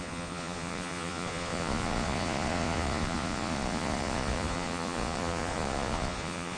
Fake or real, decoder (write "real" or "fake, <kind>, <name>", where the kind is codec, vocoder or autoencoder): fake, vocoder, Vocos